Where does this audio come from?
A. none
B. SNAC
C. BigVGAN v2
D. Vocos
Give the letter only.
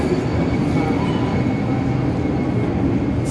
A